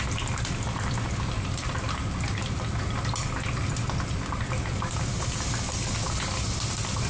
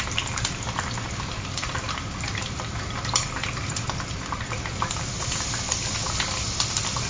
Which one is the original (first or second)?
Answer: first